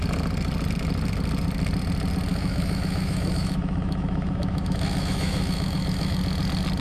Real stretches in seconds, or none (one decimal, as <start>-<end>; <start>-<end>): 0.0-2.3; 6.2-6.8